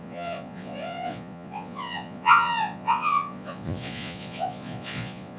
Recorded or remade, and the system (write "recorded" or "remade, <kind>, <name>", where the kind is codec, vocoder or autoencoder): remade, vocoder, Vocos